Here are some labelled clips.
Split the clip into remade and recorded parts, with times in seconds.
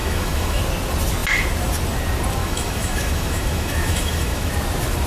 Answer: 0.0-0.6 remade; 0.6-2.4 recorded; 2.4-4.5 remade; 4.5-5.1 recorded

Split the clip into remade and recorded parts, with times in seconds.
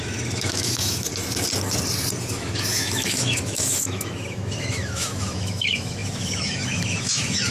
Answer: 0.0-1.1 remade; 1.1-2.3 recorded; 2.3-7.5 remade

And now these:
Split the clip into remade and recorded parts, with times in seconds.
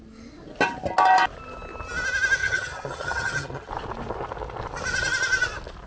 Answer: 0.0-2.4 recorded; 2.4-3.7 remade; 3.7-5.9 recorded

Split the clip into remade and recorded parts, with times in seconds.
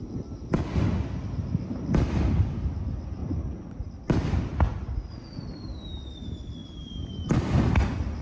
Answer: 0.0-3.2 recorded; 3.2-3.9 remade; 3.9-4.5 recorded; 4.5-5.4 remade; 5.4-8.2 recorded